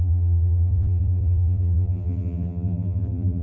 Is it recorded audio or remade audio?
remade